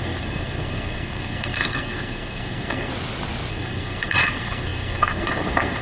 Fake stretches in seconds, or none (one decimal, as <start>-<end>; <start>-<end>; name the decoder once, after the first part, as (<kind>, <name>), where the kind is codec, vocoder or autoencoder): 0.0-2.9 (codec, SNAC); 3.5-5.8